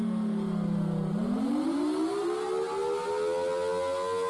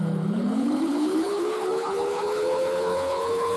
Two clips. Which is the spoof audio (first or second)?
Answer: second